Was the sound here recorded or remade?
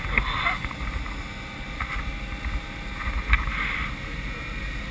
recorded